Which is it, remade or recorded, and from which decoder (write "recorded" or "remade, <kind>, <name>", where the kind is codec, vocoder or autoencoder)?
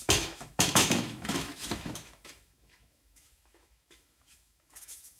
remade, autoencoder, DAC-VAE